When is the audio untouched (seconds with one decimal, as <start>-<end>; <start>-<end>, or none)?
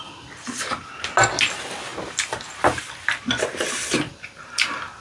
0.0-5.0